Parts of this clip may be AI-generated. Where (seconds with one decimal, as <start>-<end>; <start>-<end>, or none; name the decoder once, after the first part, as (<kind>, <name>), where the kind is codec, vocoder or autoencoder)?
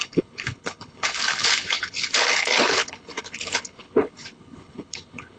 0.0-5.4 (codec, HILCodec)